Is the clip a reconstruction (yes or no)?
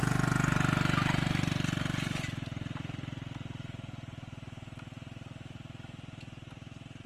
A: no